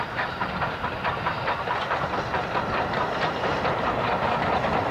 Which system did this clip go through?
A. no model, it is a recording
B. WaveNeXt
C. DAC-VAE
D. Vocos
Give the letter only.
A